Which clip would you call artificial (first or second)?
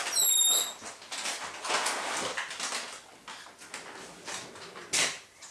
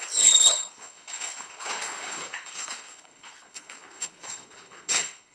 second